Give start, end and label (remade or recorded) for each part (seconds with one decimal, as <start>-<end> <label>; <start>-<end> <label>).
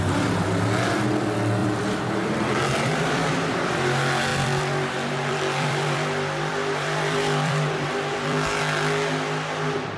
0.0-1.6 recorded; 1.6-3.7 remade; 3.7-4.3 recorded; 4.3-8.6 remade; 8.6-10.0 recorded